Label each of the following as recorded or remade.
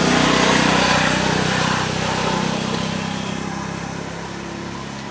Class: recorded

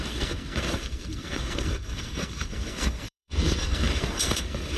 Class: remade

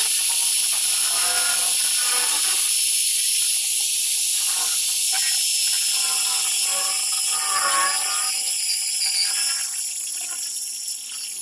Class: recorded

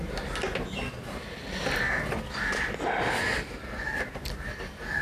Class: recorded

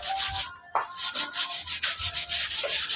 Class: recorded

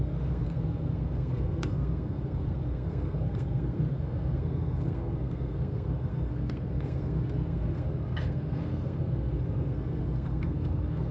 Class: remade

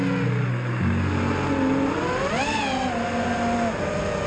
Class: recorded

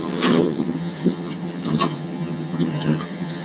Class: remade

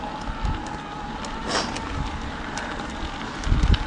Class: recorded